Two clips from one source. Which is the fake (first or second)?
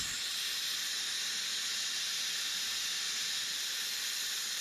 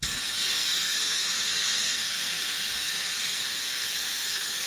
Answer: second